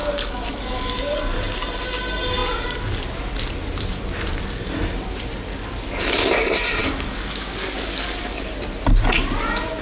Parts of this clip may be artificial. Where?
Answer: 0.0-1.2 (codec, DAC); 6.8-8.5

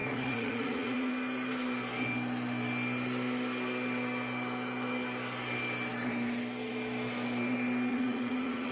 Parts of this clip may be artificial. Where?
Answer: 0.0-1.1 (vocoder, Vocos); 7.9-8.7

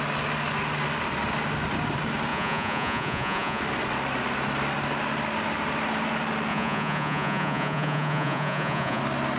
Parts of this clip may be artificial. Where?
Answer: 2.3-3.6 (vocoder, Vocos); 6.5-9.0